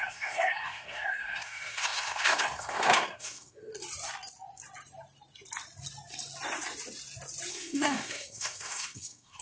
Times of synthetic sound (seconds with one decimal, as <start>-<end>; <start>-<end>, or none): 0.0-3.7; 7.5-9.4

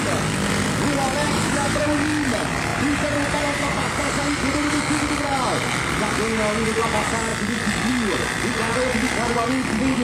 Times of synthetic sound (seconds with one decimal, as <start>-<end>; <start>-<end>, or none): 1.2-1.8; 2.7-4.8

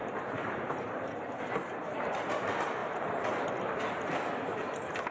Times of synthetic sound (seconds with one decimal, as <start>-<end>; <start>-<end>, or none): 0.0-1.2; 2.8-3.8

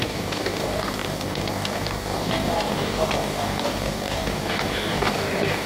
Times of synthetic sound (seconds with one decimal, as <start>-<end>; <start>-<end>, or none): 0.0-5.7

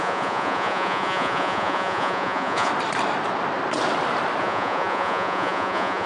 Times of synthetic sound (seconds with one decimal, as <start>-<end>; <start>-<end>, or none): 0.0-2.7; 4.4-6.1